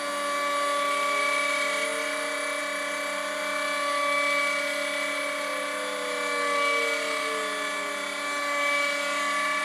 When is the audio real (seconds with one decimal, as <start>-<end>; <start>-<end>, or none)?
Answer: 0.0-9.6